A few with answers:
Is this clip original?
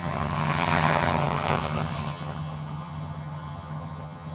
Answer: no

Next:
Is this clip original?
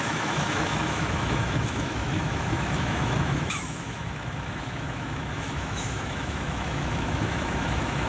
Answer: no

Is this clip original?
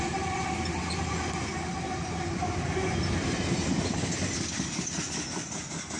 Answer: yes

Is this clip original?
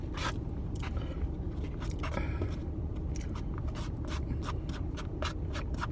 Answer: yes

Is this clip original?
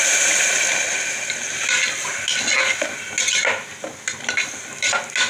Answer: yes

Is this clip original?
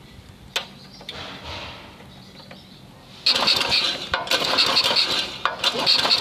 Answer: yes